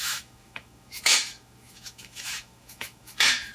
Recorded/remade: remade